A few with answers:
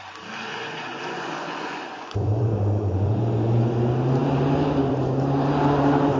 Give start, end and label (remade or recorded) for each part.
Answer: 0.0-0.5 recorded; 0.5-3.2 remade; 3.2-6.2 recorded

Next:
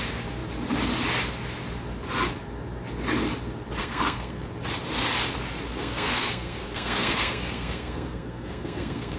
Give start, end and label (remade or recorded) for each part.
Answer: 0.0-3.8 recorded; 3.8-4.5 remade; 4.5-5.7 recorded; 5.7-9.2 remade